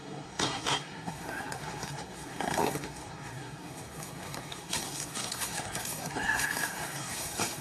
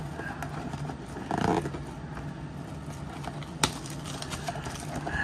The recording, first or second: second